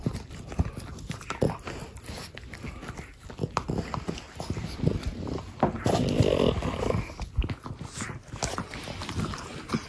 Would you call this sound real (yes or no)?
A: yes